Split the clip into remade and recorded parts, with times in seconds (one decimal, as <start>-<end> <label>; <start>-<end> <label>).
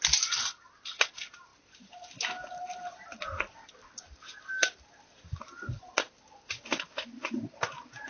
0.0-8.1 recorded